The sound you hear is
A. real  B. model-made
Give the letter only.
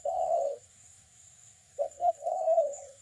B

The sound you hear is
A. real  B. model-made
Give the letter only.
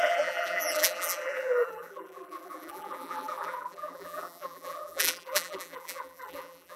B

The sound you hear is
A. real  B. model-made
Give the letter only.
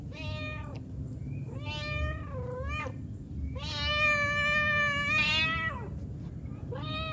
A